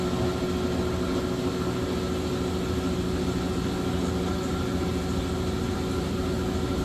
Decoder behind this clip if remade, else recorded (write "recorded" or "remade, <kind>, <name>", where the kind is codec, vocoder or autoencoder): recorded